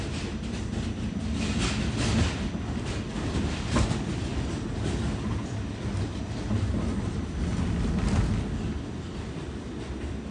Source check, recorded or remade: recorded